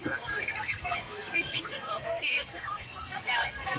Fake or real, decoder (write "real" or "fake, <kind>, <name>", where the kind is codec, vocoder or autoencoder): fake, codec, SNAC